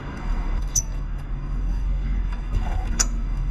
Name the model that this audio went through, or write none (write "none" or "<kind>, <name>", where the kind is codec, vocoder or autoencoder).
codec, SNAC